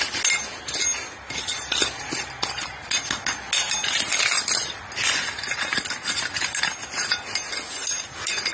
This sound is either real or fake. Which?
real